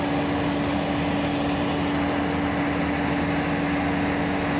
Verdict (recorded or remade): recorded